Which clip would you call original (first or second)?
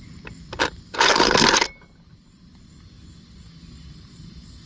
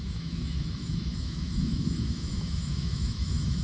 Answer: first